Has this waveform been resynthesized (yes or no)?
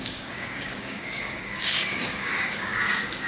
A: yes